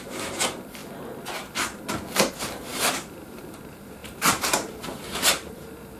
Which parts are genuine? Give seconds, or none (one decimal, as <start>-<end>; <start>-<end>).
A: 0.8-2.3